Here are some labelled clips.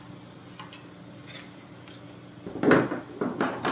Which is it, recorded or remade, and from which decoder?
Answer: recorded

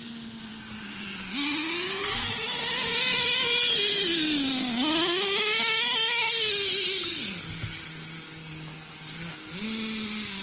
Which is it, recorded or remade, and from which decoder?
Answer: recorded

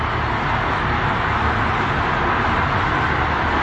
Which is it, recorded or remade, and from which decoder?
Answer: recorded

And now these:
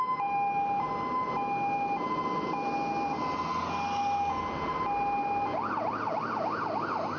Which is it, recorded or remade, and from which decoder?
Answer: recorded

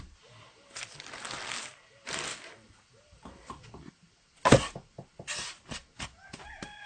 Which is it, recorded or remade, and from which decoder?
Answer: recorded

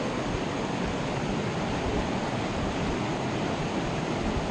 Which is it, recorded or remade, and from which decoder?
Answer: recorded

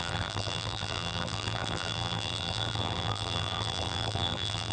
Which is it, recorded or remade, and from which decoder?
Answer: remade, vocoder, BigVGAN v2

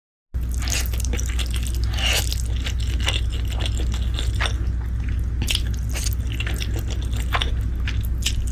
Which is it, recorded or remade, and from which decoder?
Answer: recorded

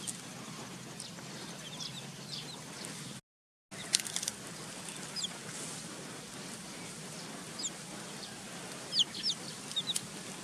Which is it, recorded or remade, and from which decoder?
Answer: recorded